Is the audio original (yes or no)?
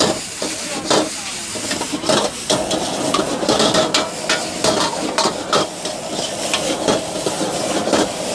yes